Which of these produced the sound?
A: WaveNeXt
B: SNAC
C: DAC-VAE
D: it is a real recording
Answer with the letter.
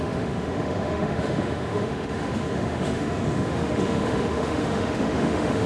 C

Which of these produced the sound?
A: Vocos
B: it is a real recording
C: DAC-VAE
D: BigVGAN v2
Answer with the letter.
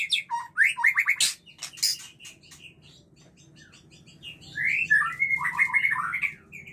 B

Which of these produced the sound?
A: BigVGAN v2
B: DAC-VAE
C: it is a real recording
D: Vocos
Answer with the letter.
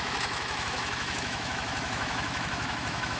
B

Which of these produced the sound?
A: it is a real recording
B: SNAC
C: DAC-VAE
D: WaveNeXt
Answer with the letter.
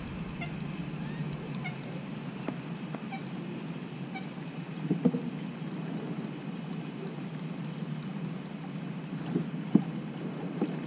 A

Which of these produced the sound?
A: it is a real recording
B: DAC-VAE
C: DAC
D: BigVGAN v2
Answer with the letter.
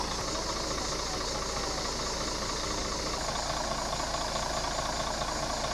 A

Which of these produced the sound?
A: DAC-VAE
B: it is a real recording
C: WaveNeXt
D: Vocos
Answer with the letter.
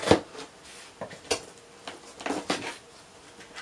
B